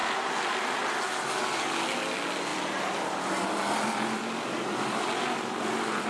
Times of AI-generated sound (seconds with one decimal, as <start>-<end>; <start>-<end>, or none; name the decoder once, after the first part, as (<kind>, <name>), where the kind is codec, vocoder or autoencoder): 0.0-0.9 (vocoder, BigVGAN v2); 2.5-4.2